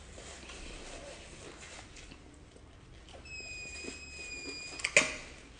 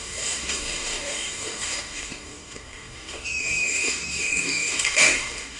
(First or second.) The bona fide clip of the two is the first